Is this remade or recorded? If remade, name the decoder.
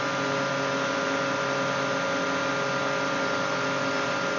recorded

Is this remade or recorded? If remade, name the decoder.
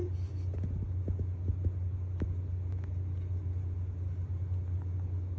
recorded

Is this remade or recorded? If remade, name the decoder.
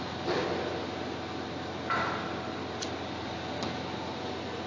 recorded